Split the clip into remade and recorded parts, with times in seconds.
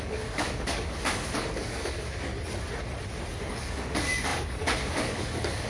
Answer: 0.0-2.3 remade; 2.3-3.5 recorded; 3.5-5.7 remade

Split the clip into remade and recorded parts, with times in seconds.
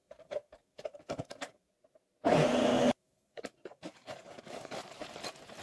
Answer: 0.0-1.7 remade; 1.7-2.7 recorded; 2.7-4.8 remade; 4.8-5.6 recorded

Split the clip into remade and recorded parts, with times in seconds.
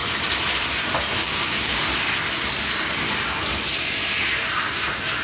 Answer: 0.0-1.2 recorded; 1.2-1.8 remade; 1.8-5.2 recorded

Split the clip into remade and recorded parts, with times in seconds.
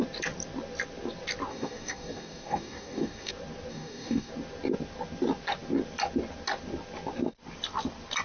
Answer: 0.0-1.5 recorded; 1.5-3.3 remade; 3.3-3.7 recorded; 3.7-4.3 remade; 4.3-8.2 recorded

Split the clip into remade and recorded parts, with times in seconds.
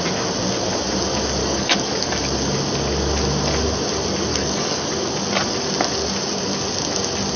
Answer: 0.0-1.4 recorded; 1.4-2.1 remade; 2.1-4.3 recorded; 4.3-4.9 remade; 4.9-7.4 recorded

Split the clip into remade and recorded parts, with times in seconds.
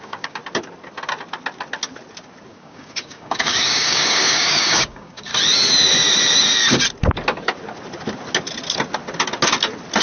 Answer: 0.0-0.4 remade; 0.4-2.5 recorded; 2.5-5.3 remade; 5.3-10.0 recorded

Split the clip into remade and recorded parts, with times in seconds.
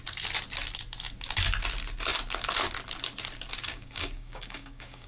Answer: 0.0-3.7 recorded; 3.7-5.1 remade